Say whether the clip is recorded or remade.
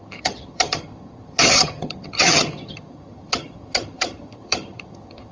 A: remade